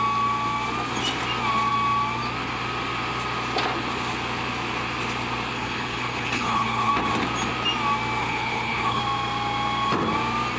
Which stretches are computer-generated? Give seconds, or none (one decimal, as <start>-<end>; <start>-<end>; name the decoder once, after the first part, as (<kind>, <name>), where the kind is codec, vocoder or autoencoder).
5.5-6.9 (codec, HILCodec); 8.2-9.0